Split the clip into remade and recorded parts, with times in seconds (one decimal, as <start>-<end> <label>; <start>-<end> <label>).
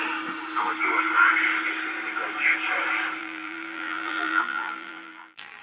0.0-3.2 recorded; 3.2-5.6 remade